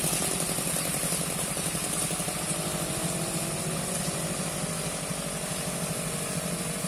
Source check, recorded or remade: recorded